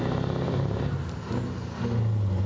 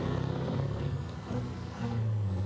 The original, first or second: first